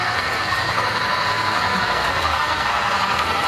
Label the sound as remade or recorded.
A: remade